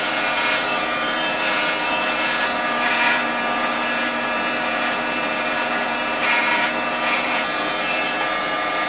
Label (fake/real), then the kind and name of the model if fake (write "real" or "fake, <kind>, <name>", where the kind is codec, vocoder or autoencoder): fake, vocoder, Vocos